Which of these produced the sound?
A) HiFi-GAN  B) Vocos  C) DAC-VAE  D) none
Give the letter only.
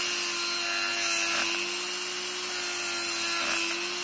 D